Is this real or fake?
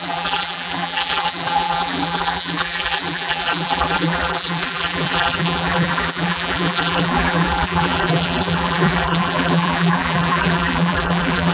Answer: fake